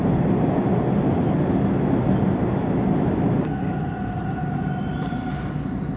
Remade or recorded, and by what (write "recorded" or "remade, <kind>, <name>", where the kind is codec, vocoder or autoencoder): recorded